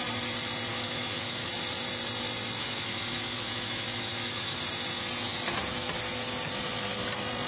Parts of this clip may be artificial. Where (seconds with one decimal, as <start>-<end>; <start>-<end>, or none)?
0.7-1.5; 2.6-4.6